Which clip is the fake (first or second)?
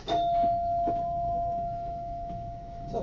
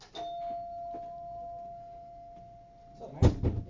first